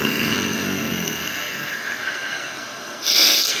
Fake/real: fake